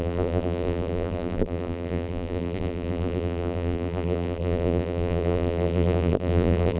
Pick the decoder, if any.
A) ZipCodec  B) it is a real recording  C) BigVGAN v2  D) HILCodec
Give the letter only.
C